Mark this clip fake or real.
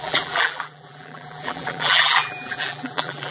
fake